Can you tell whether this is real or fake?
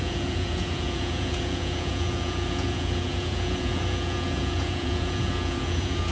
fake